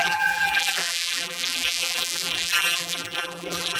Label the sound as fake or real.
fake